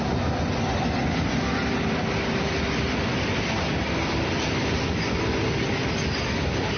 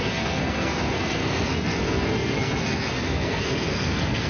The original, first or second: first